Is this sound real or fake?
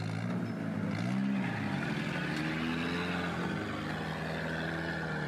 real